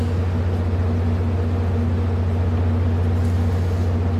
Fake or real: real